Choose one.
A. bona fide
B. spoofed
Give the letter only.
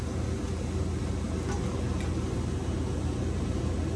A